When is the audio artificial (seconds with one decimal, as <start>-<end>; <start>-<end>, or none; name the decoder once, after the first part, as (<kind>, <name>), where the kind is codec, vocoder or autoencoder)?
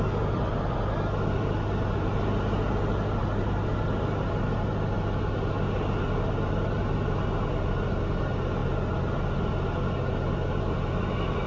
none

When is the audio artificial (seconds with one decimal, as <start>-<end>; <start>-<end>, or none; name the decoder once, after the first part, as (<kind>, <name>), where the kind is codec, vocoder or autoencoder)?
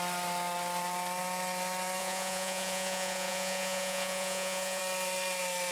2.0-4.8 (vocoder, Vocos)